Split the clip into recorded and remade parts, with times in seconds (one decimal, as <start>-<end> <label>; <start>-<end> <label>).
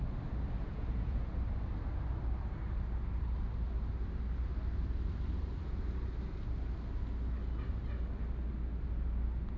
0.0-0.6 recorded; 0.6-1.2 remade; 1.2-9.6 recorded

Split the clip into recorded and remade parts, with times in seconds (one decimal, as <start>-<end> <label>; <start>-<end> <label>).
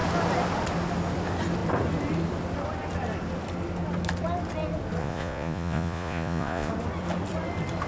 0.0-5.0 recorded; 5.0-6.7 remade; 6.7-7.9 recorded